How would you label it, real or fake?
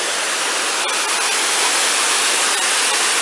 real